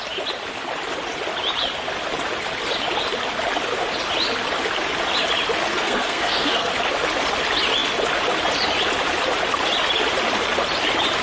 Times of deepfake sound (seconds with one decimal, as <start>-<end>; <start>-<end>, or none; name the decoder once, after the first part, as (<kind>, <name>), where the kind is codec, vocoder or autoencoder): 5.7-6.7 (codec, SNAC)